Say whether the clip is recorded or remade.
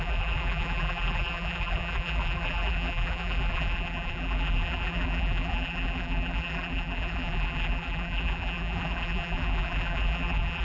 remade